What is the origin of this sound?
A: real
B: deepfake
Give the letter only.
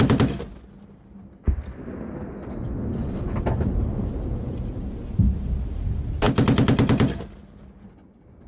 A